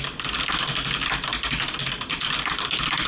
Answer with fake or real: real